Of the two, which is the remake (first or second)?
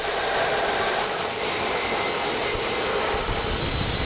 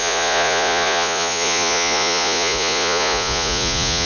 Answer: second